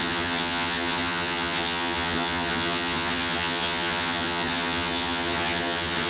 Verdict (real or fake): fake